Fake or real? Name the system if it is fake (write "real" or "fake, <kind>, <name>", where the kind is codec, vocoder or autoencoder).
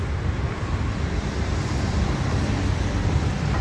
fake, vocoder, BigVGAN v2